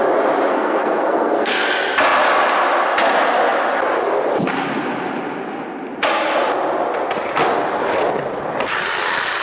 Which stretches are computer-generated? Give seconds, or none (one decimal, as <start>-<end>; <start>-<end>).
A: 0.5-1.7